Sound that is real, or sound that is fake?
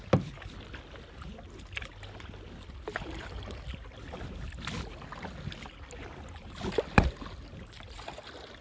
real